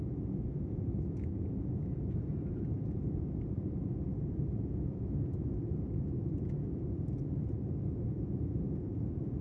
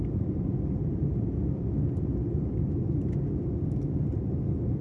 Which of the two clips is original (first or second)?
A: second